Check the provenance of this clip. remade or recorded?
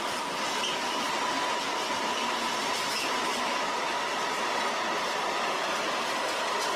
remade